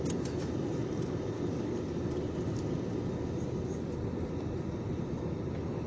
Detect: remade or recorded recorded